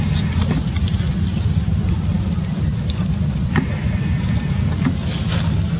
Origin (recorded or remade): recorded